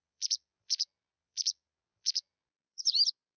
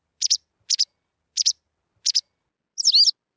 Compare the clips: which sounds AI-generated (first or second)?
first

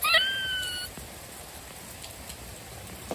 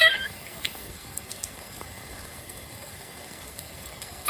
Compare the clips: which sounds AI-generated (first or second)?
second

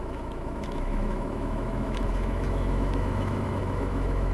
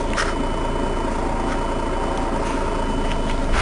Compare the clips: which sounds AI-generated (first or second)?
first